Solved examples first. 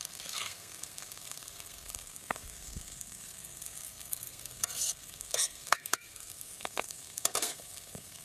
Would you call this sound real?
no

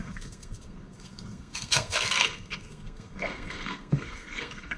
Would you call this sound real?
no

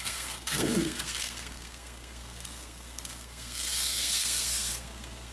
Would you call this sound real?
no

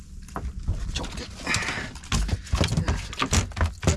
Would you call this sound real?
yes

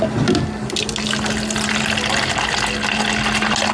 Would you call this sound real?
yes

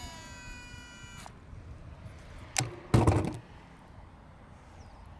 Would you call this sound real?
yes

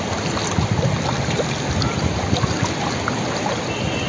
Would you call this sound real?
yes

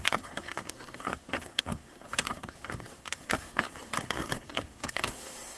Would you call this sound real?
no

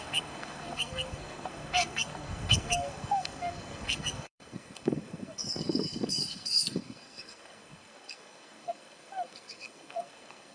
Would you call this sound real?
no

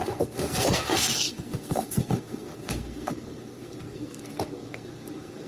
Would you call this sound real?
no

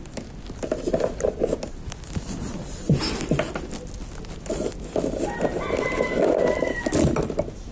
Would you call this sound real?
yes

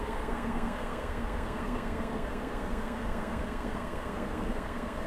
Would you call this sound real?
no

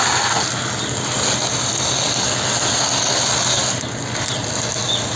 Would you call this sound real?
yes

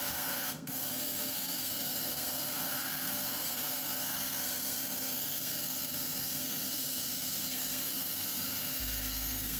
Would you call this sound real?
no